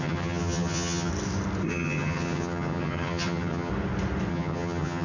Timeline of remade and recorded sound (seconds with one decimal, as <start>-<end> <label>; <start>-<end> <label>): 0.0-1.1 remade; 1.1-1.7 recorded; 1.7-3.7 remade; 3.7-4.3 recorded; 4.3-5.0 remade